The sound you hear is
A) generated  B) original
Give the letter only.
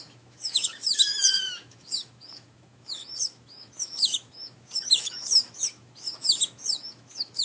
A